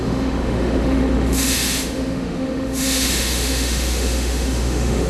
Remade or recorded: remade